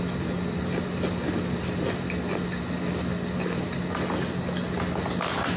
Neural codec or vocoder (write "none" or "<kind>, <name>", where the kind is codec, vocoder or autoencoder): none